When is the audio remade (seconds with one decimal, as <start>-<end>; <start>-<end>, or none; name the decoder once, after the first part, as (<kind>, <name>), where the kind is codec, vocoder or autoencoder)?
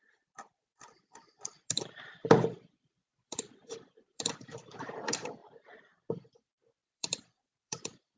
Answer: 0.0-1.5 (vocoder, BigVGAN v2); 2.7-5.4; 6.3-8.2